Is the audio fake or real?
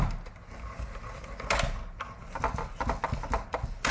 real